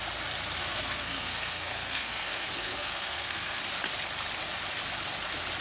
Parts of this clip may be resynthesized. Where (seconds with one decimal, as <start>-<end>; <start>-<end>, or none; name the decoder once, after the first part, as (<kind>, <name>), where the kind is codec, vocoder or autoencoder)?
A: 0.6-3.6 (codec, SNAC)

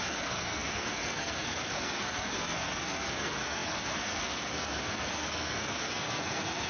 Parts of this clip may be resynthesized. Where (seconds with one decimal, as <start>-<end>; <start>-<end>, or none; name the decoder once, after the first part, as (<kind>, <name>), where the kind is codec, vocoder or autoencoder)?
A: 0.0-6.7 (codec, SNAC)

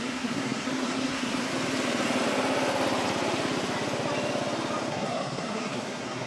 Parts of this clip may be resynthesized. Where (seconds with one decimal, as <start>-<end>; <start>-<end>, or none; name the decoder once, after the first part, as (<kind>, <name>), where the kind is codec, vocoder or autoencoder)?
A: 0.0-1.5 (codec, SNAC); 4.9-6.3

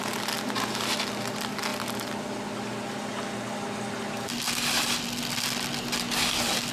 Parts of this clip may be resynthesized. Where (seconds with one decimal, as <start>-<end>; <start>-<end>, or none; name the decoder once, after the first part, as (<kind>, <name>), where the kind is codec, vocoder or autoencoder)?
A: none

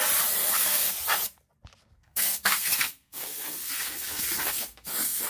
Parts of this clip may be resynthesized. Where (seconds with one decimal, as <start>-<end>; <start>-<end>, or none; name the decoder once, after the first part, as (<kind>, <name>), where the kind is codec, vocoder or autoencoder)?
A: 0.4-0.9 (codec, SNAC); 1.8-5.3

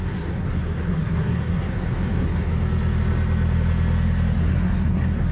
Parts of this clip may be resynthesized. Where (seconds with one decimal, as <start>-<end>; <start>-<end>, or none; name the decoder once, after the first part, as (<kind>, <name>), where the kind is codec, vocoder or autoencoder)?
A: 0.0-2.5 (codec, SNAC); 4.4-5.3